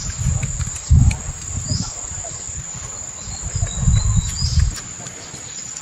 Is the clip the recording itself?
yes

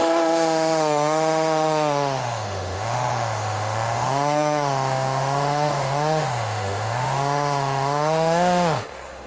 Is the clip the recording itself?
no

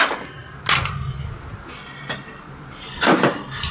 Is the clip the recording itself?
yes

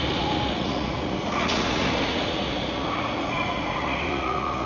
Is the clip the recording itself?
no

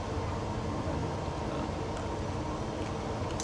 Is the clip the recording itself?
yes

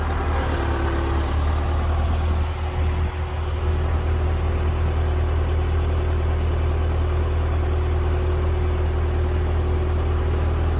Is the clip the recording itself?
yes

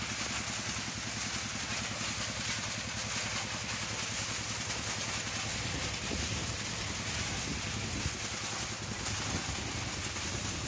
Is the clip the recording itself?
yes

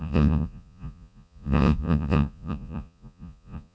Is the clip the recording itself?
no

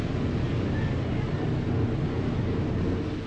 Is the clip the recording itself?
yes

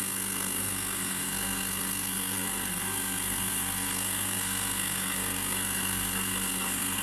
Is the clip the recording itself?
no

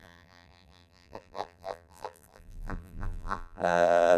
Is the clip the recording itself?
no